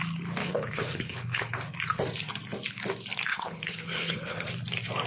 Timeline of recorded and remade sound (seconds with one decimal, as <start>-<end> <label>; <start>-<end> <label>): 0.0-0.4 recorded; 0.4-1.5 remade; 1.5-3.3 recorded; 3.3-4.5 remade; 4.5-5.1 recorded